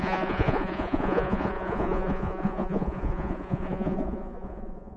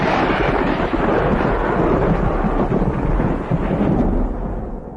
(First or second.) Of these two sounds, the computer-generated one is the first